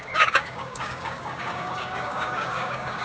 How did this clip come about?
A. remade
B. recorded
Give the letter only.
A